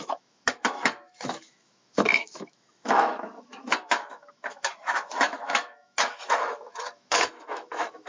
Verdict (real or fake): fake